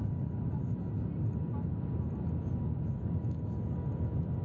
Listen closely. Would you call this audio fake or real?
real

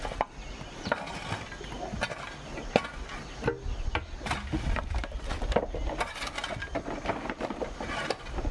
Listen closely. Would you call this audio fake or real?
real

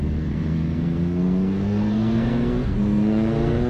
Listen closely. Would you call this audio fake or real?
fake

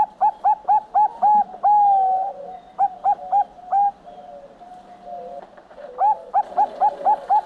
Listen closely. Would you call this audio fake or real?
real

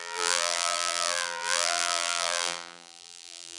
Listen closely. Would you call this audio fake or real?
fake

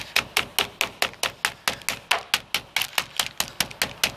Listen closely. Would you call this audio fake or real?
real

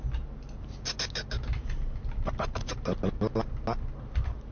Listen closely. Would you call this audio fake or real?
real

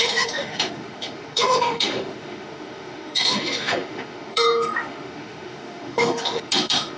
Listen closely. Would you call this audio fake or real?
fake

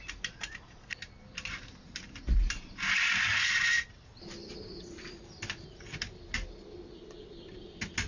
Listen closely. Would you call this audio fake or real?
real